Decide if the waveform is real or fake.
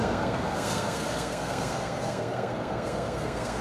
fake